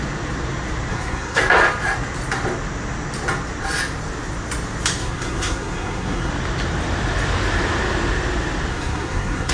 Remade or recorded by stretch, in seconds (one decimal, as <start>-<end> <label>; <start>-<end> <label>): 0.0-0.9 recorded; 0.9-1.4 remade; 1.4-5.0 recorded; 5.0-6.3 remade; 6.3-8.7 recorded; 8.7-9.5 remade